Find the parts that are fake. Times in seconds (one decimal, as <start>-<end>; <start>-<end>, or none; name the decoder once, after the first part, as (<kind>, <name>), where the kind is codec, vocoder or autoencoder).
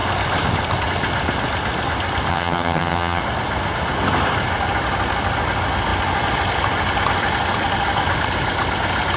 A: 2.3-3.2 (vocoder, HiFi-GAN)